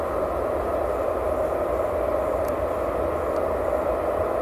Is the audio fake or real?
real